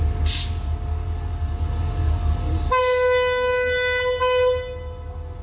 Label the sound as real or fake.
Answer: real